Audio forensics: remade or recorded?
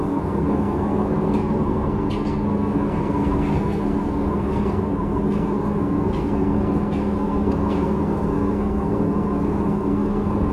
remade